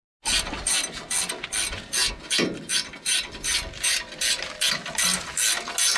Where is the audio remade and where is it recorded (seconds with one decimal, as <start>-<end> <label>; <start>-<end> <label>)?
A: 0.0-2.7 recorded; 2.7-4.3 remade; 4.3-6.0 recorded